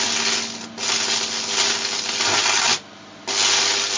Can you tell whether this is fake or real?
real